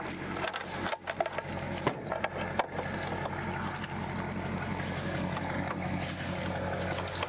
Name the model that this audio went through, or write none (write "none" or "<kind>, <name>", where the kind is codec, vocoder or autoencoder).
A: none